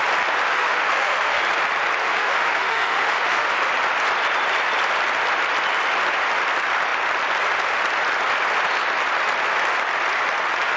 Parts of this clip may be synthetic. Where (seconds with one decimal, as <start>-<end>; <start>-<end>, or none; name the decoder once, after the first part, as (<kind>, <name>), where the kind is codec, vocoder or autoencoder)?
0.5-1.4 (autoencoder, DAC-VAE); 2.0-3.7